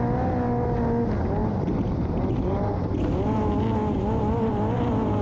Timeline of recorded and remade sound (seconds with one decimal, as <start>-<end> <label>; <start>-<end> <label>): 0.0-5.2 recorded